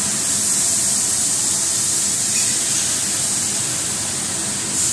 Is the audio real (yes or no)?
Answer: yes